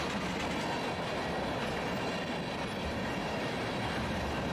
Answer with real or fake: real